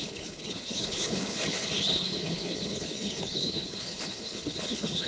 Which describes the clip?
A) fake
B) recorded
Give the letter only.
A